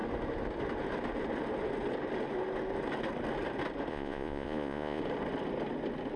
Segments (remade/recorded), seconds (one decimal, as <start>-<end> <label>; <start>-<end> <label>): 0.0-3.9 recorded; 3.9-5.0 remade; 5.0-6.2 recorded